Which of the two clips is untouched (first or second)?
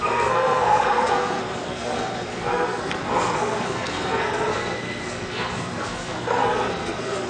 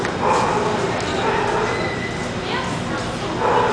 second